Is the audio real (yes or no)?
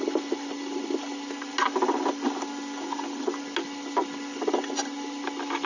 yes